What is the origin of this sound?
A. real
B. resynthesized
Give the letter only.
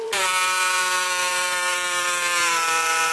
B